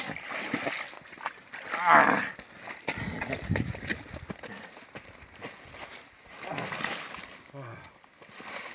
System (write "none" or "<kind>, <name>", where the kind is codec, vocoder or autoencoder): none